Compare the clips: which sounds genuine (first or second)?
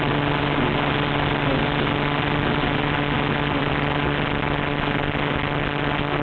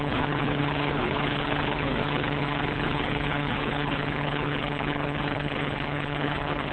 first